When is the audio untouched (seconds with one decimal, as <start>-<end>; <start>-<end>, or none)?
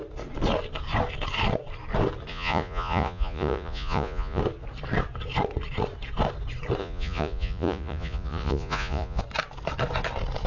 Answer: 0.0-2.3; 4.4-6.8; 9.2-10.5